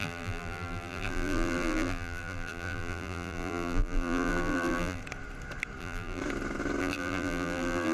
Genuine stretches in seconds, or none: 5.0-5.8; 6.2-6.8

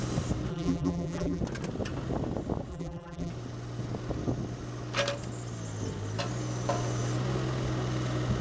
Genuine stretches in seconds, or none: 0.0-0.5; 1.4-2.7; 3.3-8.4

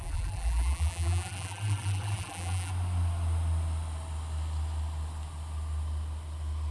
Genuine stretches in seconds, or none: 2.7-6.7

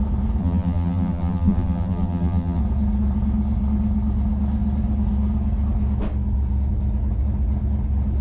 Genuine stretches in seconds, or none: 0.0-0.4; 2.6-8.2